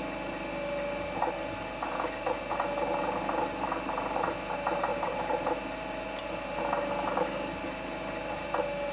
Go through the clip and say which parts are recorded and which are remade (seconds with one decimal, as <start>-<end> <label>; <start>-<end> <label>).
0.0-8.9 recorded